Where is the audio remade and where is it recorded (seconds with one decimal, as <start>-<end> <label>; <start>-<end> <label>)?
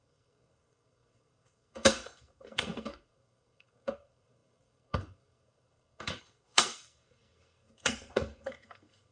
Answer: 0.0-9.1 remade